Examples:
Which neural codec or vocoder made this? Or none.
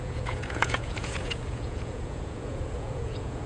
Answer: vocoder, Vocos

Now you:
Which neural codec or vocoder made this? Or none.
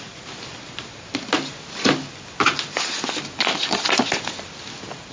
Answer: none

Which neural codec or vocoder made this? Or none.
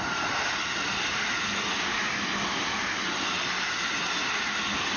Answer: none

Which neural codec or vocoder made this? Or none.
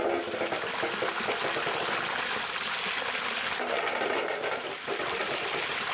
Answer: none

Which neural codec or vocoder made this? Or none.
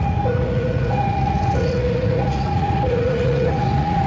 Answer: vocoder, Vocos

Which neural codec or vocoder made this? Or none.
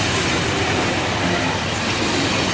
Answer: none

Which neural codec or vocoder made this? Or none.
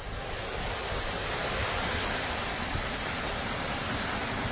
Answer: none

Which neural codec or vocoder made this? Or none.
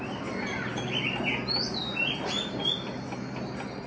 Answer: none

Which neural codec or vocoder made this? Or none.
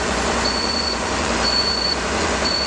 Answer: vocoder, Vocos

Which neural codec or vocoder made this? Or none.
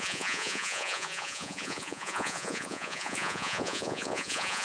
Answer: vocoder, Vocos